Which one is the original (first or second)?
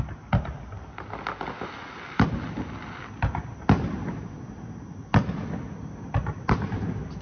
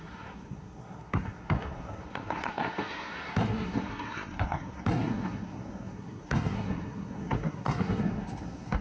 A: first